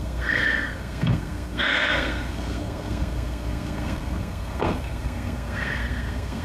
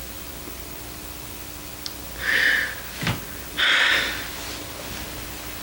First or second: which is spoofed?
first